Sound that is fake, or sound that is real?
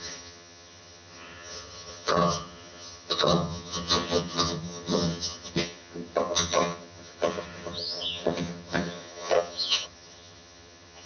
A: fake